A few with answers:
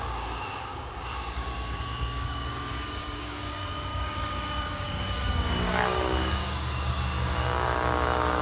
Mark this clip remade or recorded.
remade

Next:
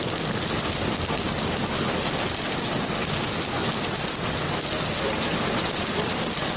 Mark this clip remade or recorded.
recorded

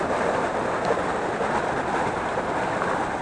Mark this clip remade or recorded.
recorded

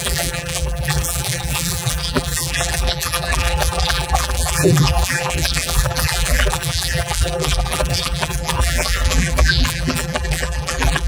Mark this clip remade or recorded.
remade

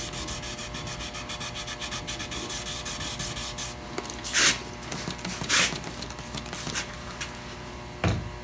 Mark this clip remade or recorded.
recorded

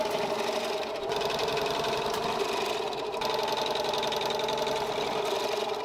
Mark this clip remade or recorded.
recorded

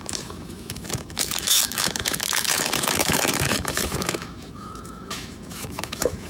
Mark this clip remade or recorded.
remade